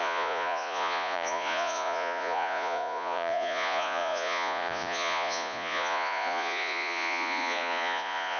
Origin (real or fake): fake